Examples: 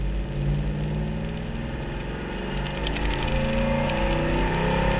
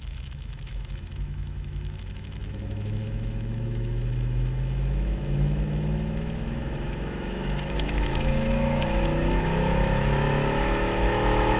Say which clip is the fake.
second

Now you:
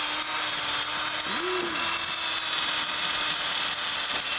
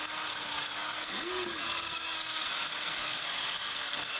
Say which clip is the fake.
second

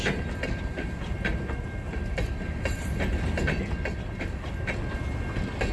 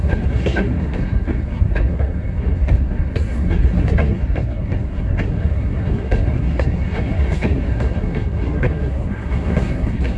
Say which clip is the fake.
second